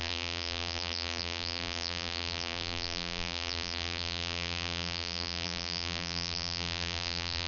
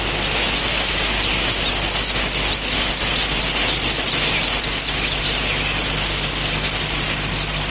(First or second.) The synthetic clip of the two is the first